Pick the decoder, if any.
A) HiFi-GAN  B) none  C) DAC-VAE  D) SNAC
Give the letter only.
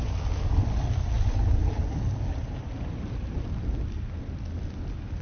B